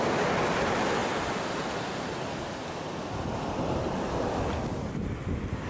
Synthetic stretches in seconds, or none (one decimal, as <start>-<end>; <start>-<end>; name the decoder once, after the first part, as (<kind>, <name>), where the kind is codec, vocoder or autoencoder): none